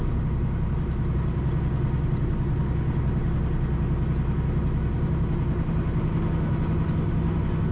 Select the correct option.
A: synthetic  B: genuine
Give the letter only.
B